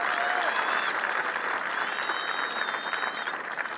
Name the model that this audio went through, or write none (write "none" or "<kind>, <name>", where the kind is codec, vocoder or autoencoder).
none